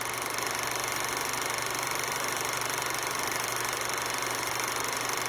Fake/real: real